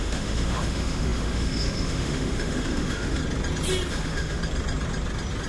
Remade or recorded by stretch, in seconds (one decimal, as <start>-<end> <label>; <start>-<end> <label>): 0.0-3.2 remade; 3.2-3.9 recorded; 3.9-4.4 remade; 4.4-5.5 recorded